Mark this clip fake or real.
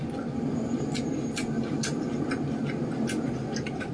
real